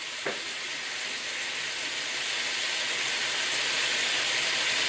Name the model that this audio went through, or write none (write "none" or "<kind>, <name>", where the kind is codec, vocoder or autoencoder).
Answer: none